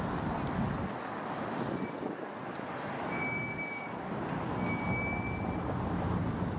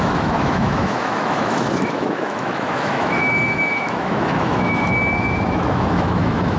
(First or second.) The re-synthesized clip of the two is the second